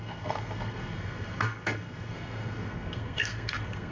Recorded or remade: remade